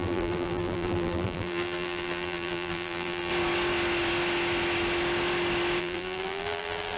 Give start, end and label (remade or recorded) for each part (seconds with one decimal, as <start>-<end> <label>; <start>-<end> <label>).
0.0-3.3 remade; 3.3-5.8 recorded; 5.8-7.0 remade